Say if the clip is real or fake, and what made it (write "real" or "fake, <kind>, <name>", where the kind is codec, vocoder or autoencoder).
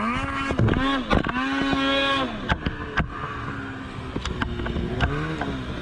real